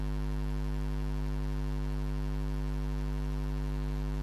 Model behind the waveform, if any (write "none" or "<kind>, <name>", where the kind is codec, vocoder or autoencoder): none